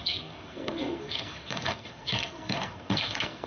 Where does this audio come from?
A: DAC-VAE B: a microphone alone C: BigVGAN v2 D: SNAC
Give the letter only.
D